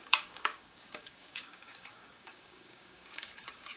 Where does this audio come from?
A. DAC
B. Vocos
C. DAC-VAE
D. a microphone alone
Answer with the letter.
A